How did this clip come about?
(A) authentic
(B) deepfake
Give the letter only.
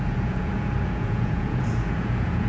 B